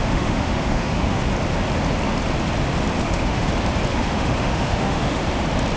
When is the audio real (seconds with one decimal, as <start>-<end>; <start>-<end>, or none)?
1.2-3.0; 3.5-3.9; 5.2-5.8